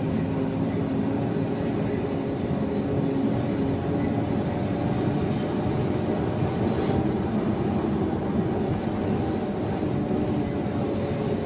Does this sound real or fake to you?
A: real